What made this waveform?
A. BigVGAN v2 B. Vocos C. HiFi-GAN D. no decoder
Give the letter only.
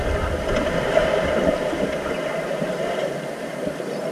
D